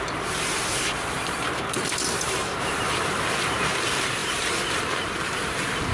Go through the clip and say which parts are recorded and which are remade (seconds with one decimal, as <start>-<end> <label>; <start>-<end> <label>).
0.0-2.4 recorded; 2.4-3.1 remade; 3.1-4.2 recorded; 4.2-4.8 remade; 4.8-5.9 recorded